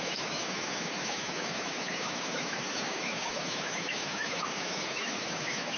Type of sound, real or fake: fake